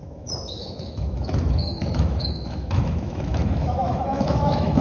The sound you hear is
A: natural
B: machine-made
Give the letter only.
B